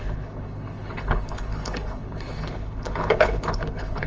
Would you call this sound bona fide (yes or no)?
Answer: no